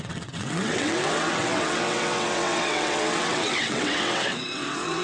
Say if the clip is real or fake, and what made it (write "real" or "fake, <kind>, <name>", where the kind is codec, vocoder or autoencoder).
fake, vocoder, WaveNeXt